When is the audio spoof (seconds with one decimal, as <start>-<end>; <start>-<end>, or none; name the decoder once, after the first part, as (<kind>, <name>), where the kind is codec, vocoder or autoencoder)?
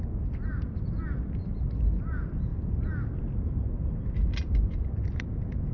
none